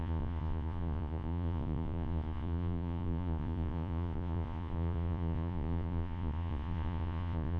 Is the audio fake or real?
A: fake